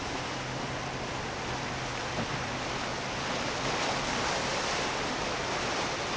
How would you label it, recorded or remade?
recorded